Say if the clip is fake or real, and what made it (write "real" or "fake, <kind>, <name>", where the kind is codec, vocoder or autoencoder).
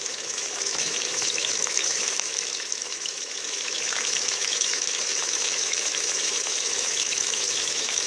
fake, autoencoder, DAC-VAE